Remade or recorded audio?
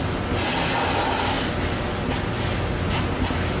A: recorded